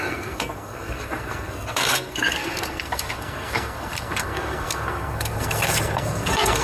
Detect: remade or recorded remade